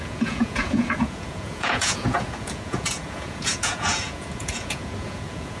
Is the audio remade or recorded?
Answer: remade